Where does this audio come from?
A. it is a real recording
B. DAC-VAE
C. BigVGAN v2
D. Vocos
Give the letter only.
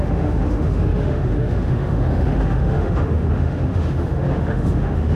B